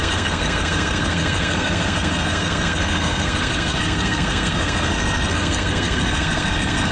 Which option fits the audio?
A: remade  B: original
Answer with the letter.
A